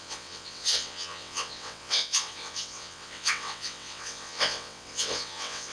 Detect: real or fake fake